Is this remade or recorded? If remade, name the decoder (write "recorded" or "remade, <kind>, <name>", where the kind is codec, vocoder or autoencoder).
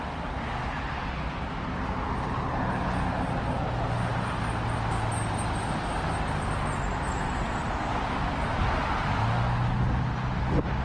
recorded